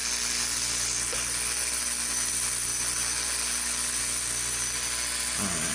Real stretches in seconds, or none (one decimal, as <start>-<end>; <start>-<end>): 0.0-5.7